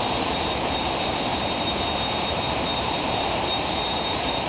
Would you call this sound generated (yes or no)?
yes